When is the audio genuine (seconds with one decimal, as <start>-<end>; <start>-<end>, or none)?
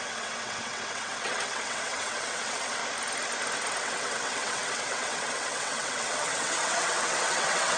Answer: 2.8-3.8